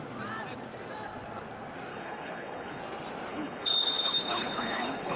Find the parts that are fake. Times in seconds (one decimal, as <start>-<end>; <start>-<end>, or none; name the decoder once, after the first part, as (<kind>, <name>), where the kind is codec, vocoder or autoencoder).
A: 1.9-2.8 (codec, HILCodec); 3.3-5.2

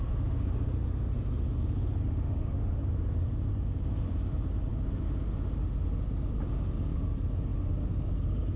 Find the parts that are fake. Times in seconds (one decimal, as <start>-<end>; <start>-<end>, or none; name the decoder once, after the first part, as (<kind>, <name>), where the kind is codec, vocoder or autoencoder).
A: 2.0-2.8 (autoencoder, DAC-VAE)

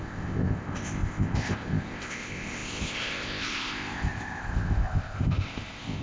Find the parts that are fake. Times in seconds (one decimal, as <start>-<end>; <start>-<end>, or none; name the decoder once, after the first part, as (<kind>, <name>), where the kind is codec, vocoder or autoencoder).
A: 0.0-6.0 (codec, ZipCodec)

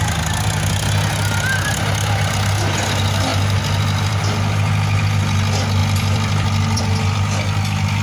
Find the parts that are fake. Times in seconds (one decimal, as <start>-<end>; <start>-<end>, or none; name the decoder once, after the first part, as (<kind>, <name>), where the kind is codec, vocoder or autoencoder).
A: 3.3-4.1 (vocoder, BigVGAN v2); 5.8-6.8

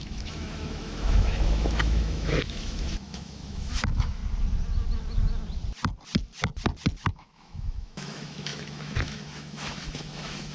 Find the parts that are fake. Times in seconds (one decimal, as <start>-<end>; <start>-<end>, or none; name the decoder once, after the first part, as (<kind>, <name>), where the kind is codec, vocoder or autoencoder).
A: 0.0-4.2 (autoencoder, DAC-VAE); 7.1-10.5

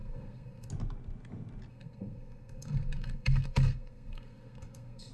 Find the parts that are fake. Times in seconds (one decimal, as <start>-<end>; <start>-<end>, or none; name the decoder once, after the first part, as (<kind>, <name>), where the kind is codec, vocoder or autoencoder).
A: 0.0-0.7 (codec, SNAC); 1.7-5.1

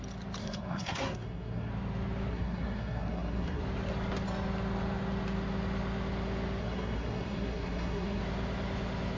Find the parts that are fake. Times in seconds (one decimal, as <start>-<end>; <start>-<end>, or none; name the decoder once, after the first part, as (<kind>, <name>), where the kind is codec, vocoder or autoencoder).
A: 0.4-1.7 (codec, SNAC); 2.3-3.6; 6.6-8.2